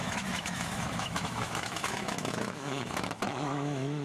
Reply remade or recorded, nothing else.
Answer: remade